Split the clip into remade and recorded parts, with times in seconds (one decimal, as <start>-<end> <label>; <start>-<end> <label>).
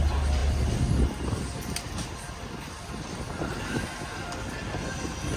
0.0-0.4 recorded; 0.4-3.6 remade; 3.6-5.4 recorded